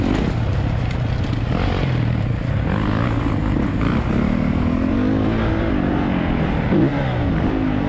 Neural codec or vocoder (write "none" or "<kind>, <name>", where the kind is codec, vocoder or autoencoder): none